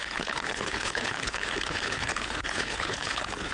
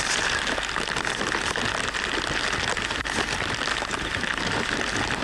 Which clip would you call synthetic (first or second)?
first